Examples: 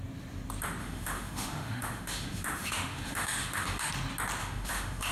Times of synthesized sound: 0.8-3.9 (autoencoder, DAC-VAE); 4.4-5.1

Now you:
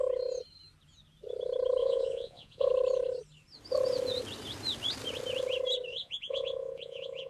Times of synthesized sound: 1.8-2.7 (vocoder, Vocos); 5.9-7.3

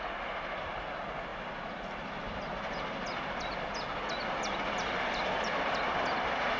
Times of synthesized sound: none

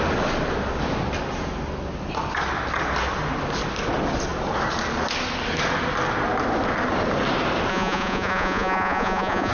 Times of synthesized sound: 7.7-9.5 (vocoder, Vocos)

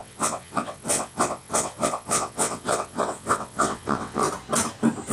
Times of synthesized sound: 0.0-4.2 (vocoder, WaveNeXt)

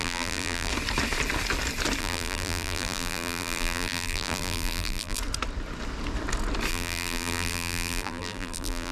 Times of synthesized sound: 0.0-0.7 (vocoder, BigVGAN v2); 2.0-5.2; 6.7-8.9

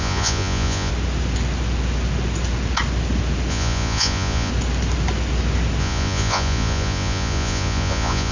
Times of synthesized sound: 0.0-0.9 (vocoder, Vocos); 3.5-4.5; 5.8-8.3

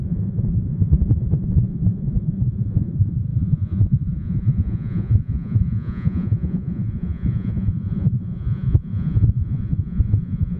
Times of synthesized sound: 0.0-10.6 (vocoder, Vocos)